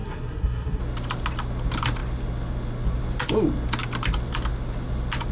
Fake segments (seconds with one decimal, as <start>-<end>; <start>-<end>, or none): 0.0-0.8